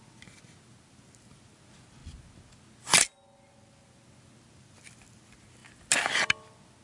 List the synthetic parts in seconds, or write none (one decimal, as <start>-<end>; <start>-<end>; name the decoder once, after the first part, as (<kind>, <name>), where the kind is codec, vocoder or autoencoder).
none